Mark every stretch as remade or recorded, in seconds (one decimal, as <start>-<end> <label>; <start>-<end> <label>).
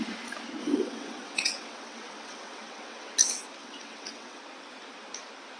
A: 0.0-0.6 recorded; 0.6-3.1 remade; 3.1-3.6 recorded; 3.6-4.4 remade; 4.4-5.6 recorded